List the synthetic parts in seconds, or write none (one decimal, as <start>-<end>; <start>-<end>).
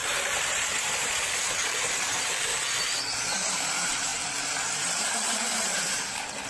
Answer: 0.0-2.5; 3.3-4.1; 4.7-6.5